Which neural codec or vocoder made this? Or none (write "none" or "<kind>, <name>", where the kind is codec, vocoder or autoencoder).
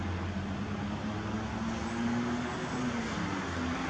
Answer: none